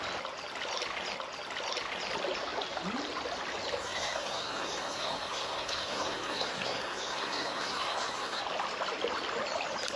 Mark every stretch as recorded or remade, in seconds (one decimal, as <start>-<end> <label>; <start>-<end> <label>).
0.0-3.8 recorded; 3.8-8.4 remade; 8.4-10.0 recorded